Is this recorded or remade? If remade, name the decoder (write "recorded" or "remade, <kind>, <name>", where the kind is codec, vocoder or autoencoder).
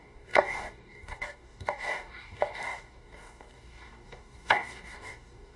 remade, codec, DAC